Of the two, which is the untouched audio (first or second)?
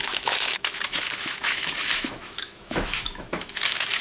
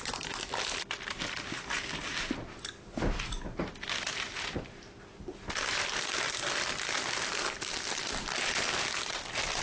second